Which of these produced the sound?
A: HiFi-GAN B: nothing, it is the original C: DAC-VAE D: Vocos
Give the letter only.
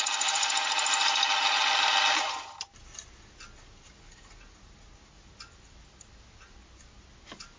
B